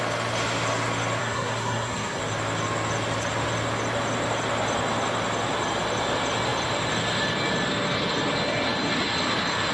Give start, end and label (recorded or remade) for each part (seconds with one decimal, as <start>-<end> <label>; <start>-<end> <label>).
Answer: 0.0-1.2 recorded; 1.2-2.2 remade; 2.2-9.7 recorded